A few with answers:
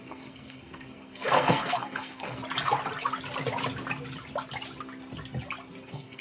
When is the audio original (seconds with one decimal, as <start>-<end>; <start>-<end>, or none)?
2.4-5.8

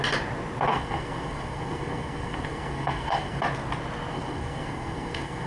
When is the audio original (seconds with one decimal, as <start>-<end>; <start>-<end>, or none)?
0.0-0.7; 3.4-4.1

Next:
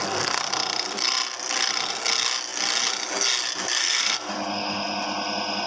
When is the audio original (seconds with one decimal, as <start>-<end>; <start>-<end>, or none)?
0.5-3.8; 4.3-5.7

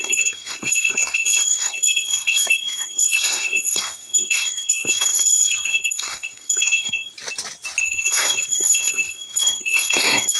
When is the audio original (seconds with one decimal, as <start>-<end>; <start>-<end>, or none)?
7.1-7.8